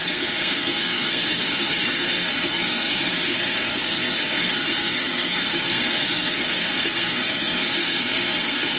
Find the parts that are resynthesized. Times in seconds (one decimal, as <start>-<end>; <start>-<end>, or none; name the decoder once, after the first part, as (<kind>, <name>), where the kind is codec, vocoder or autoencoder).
0.0-8.8 (codec, SNAC)